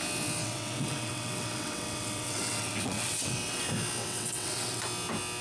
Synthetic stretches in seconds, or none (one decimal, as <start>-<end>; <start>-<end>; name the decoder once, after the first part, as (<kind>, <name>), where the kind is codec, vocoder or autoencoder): 0.4-3.6 (vocoder, WaveNeXt); 4.0-4.8